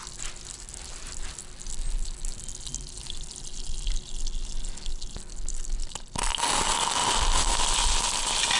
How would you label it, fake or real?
real